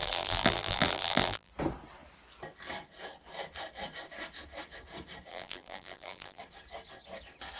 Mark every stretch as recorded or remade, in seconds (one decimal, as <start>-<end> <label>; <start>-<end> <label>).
0.0-1.5 remade; 1.5-5.3 recorded; 5.3-6.4 remade; 6.4-7.6 recorded